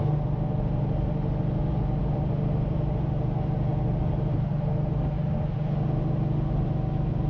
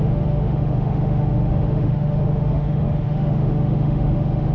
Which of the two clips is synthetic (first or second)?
second